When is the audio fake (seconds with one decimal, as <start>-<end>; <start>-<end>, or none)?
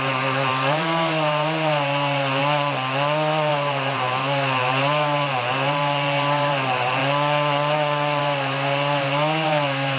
0.0-2.4; 3.5-7.0; 8.2-10.0